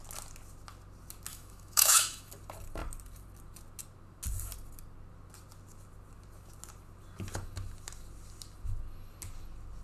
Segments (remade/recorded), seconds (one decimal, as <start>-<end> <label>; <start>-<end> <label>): 0.0-1.3 recorded; 1.3-2.3 remade; 2.3-9.8 recorded